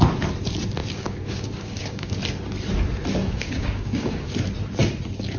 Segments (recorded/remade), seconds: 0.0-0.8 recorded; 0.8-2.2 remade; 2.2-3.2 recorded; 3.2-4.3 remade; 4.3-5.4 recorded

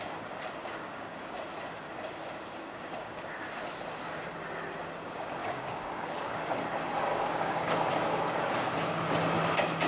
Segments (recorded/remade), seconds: 0.0-0.6 recorded; 0.6-1.4 remade; 1.4-2.5 recorded; 2.5-3.3 remade; 3.3-5.4 recorded; 5.4-6.4 remade; 6.4-7.1 recorded; 7.1-7.7 remade; 7.7-9.9 recorded

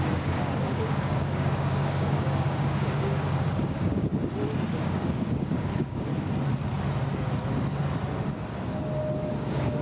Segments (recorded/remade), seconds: 0.0-4.1 remade; 4.1-4.7 recorded; 4.7-6.1 remade; 6.1-9.2 recorded; 9.2-9.8 remade

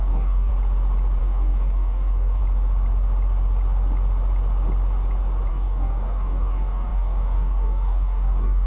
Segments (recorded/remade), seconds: 0.0-0.5 remade; 0.5-1.2 recorded; 1.2-2.4 remade; 2.4-5.5 recorded; 5.5-8.7 remade

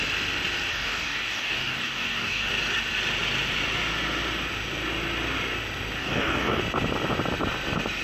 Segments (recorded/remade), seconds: 0.0-0.7 recorded; 0.7-2.5 remade; 2.5-6.0 recorded; 6.0-6.6 remade; 6.6-8.0 recorded